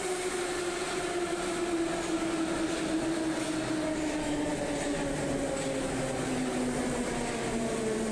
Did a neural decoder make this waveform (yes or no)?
no